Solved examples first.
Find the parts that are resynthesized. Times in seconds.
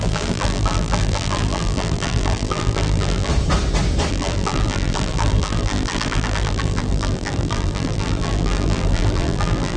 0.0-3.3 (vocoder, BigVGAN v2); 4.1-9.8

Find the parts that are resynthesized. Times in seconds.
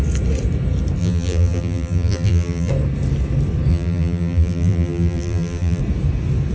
1.0-2.7 (vocoder, BigVGAN v2); 3.7-5.8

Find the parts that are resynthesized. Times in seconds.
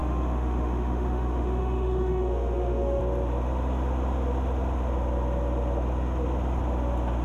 0.0-3.0 (autoencoder, DAC-VAE)